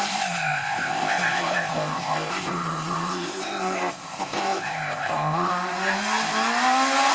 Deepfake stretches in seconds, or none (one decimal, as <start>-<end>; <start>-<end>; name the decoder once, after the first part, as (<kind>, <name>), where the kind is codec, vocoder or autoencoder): 0.0-5.5 (codec, ZipCodec)